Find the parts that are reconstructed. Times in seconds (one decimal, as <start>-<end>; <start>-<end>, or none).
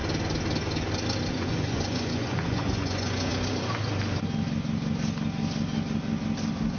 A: 1.3-3.3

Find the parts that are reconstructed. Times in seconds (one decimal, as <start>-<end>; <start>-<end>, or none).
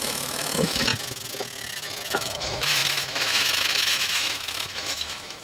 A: 0.0-0.9; 2.1-5.4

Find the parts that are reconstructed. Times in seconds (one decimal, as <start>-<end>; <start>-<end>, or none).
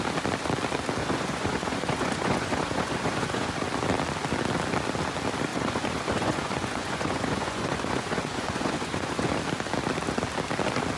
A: 1.0-3.5; 5.5-9.3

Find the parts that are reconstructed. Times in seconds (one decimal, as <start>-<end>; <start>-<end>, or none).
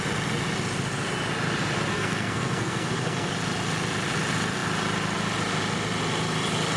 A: 1.9-3.3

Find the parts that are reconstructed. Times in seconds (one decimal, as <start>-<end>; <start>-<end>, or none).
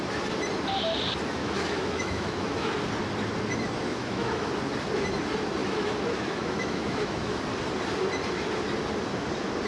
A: 1.4-2.7; 3.9-4.5; 5.6-7.4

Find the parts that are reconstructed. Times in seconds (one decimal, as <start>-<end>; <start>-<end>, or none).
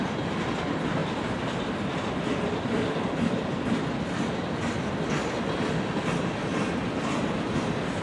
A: none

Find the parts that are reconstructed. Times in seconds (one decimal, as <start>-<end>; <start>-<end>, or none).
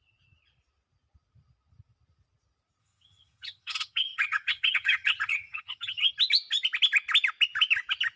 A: 2.8-6.1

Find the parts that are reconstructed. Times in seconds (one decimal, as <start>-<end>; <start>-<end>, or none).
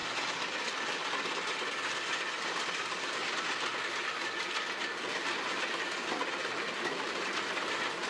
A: none